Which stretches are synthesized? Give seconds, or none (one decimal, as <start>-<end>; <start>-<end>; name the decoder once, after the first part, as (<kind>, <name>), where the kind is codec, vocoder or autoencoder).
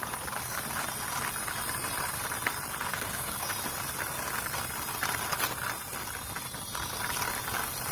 2.9-3.5 (codec, SNAC)